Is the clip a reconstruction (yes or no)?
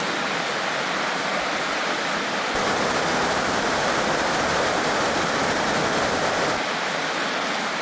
no